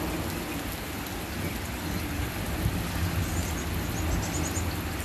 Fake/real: real